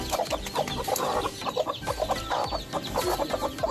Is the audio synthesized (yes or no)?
no